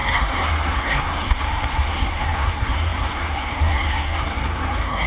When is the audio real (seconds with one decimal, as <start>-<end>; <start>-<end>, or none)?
none